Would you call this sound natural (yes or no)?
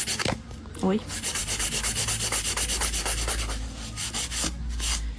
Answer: yes